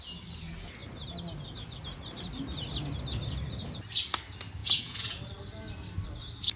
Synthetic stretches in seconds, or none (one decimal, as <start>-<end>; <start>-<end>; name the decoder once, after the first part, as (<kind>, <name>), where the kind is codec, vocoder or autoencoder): 4.6-5.2 (vocoder, Vocos)